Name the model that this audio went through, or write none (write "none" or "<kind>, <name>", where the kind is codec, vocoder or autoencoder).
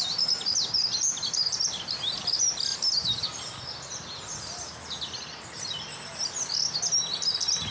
none